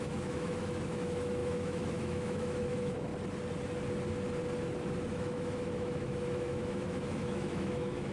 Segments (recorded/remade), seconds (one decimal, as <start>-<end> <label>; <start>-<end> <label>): 0.0-3.1 remade; 3.1-5.1 recorded; 5.1-8.1 remade